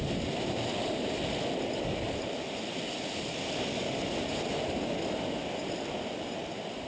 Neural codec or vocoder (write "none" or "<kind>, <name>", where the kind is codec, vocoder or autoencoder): none